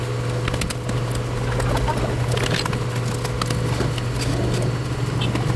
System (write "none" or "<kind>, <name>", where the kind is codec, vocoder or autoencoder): none